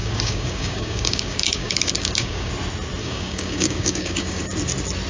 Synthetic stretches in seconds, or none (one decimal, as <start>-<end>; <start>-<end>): 0.0-2.5; 3.0-4.4